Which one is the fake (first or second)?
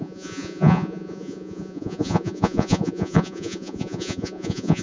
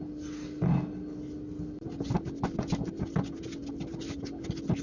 first